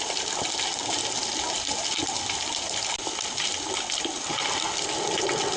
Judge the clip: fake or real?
real